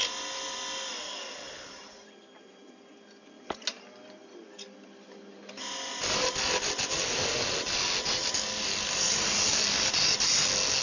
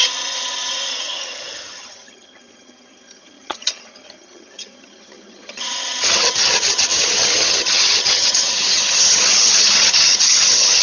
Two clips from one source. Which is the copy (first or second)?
second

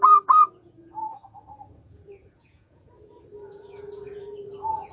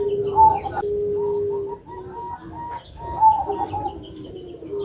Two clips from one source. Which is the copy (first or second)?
first